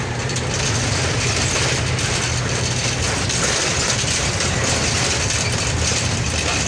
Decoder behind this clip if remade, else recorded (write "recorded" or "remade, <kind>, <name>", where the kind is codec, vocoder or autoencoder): recorded